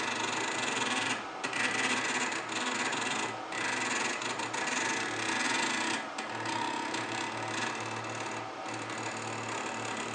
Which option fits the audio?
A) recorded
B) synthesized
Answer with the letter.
A